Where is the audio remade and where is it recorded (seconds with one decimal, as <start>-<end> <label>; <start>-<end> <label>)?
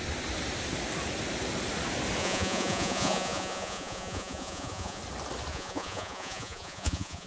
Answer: 0.0-2.2 recorded; 2.2-5.0 remade; 5.0-5.5 recorded; 5.5-7.3 remade